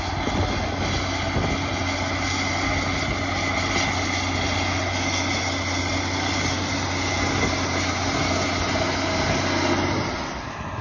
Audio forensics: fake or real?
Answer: real